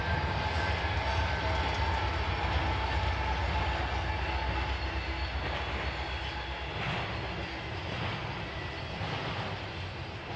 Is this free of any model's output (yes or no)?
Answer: yes